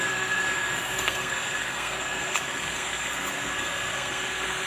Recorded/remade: remade